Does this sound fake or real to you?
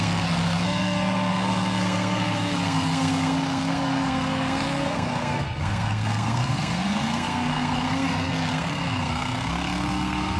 fake